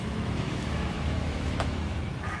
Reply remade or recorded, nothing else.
remade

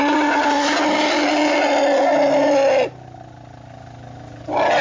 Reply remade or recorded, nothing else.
recorded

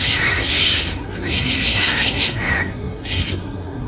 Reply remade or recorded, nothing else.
remade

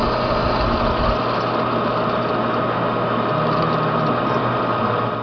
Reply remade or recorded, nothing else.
recorded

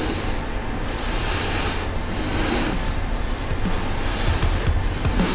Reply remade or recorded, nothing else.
recorded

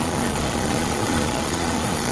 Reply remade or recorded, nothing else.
remade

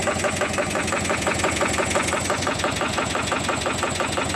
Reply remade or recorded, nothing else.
remade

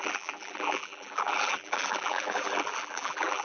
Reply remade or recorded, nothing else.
remade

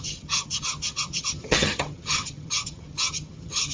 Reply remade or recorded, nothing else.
remade